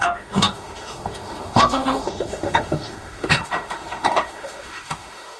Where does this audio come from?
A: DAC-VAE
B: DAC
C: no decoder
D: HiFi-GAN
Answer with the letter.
A